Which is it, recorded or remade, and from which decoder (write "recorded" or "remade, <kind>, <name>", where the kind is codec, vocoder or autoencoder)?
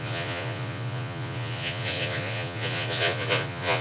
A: remade, vocoder, Vocos